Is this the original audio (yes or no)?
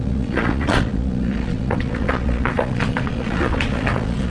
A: no